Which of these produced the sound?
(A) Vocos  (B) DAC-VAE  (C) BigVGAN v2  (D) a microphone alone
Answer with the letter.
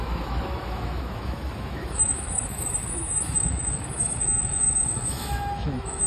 B